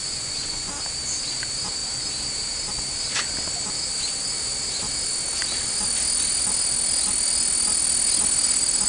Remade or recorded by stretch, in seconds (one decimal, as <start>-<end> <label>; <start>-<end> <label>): 0.0-0.7 remade; 0.7-8.9 recorded